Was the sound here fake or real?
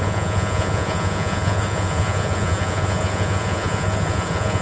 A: fake